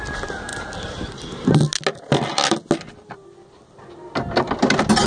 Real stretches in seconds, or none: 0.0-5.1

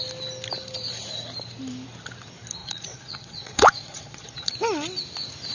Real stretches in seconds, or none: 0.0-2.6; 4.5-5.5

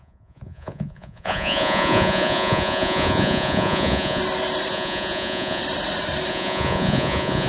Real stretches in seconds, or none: 4.2-4.7; 5.6-6.3

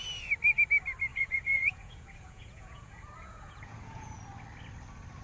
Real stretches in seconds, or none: 0.0-1.1; 4.2-5.2